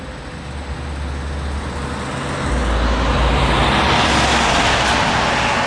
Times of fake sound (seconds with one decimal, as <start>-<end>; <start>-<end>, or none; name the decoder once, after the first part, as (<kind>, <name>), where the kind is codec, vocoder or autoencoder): none